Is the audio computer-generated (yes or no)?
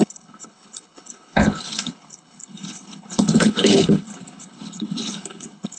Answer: yes